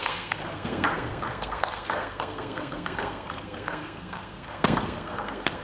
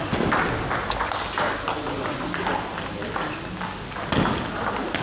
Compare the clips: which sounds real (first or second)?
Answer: second